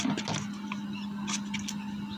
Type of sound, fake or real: real